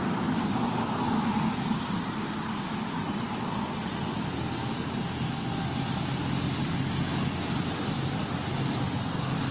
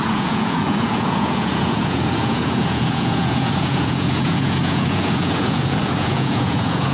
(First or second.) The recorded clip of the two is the first